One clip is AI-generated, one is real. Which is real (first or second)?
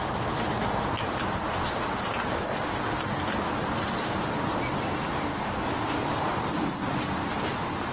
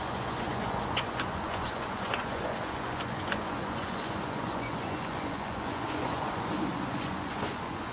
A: first